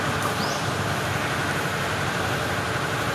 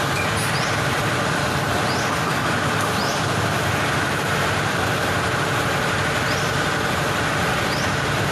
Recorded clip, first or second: first